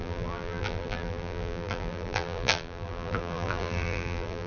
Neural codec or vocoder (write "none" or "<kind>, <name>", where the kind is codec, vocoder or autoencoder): vocoder, BigVGAN v2